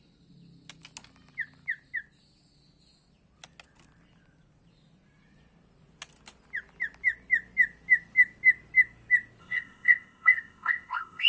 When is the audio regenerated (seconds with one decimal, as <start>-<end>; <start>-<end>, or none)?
9.4-11.3